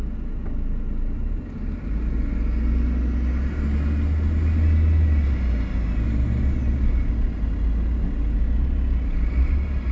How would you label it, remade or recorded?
recorded